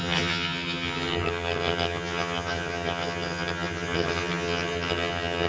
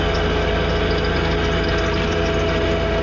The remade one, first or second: first